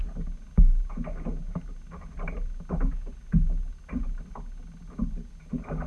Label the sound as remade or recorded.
recorded